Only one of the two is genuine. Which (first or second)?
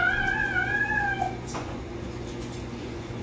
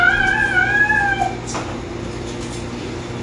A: second